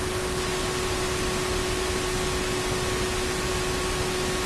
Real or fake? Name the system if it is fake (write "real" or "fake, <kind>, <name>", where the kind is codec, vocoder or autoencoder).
real